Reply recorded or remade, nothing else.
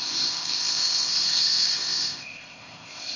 remade